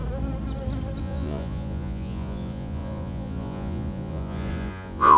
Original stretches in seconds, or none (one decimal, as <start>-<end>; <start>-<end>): 0.0-1.0